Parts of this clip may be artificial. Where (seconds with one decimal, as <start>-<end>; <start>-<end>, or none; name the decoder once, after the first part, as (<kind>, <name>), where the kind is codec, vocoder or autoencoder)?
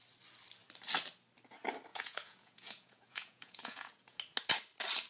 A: 1.9-4.2 (vocoder, Vocos)